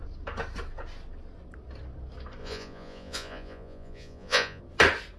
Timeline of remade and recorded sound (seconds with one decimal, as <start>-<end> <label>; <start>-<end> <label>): 0.0-2.4 recorded; 2.4-4.6 remade; 4.6-5.2 recorded